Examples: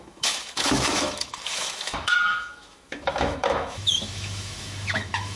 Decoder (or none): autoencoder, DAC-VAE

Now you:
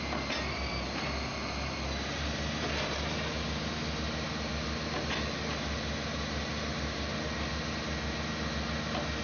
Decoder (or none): none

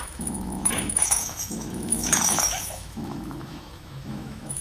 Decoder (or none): autoencoder, DAC-VAE